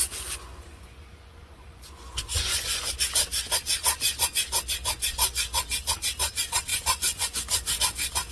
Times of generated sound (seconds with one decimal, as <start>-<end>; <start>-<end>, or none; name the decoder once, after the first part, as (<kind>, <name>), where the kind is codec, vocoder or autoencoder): 0.0-2.9 (vocoder, Vocos); 6.7-7.8